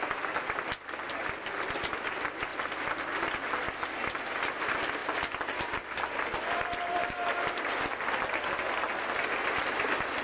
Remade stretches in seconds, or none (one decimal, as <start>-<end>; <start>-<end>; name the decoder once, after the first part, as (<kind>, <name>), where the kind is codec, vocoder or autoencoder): 5.0-9.4 (vocoder, BigVGAN v2)